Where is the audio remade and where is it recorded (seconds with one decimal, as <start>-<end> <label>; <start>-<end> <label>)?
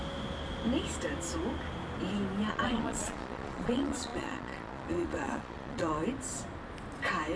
0.0-2.5 recorded; 2.5-6.0 remade; 6.0-7.4 recorded